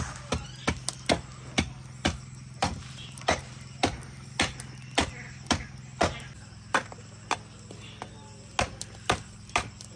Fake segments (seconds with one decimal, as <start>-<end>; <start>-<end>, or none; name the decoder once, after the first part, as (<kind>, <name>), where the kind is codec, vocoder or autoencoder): 2.6-4.3 (vocoder, BigVGAN v2)